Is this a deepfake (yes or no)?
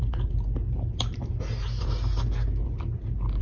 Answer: no